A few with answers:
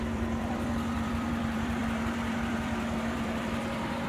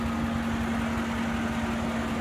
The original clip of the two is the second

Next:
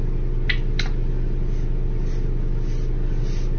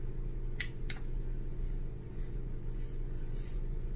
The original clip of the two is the first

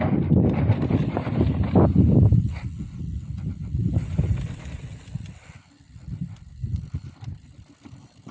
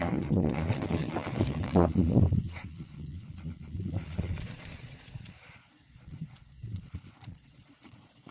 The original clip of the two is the first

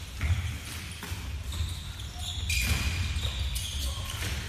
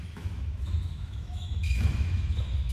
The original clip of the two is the first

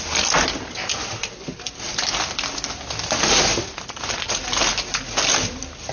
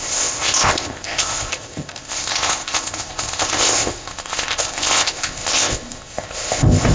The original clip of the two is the first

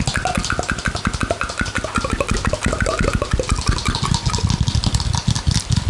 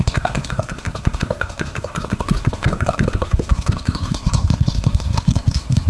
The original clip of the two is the first